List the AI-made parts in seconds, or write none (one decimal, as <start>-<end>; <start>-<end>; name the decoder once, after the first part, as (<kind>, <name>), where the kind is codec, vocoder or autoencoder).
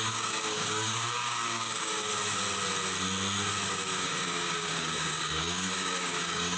0.0-2.1 (codec, DAC); 3.7-6.6